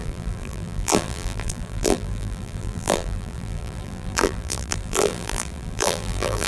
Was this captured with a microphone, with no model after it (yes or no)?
no